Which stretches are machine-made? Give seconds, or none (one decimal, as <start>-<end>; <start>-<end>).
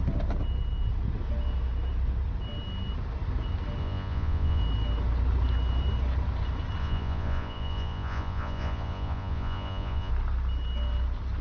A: 3.8-4.6; 6.8-10.1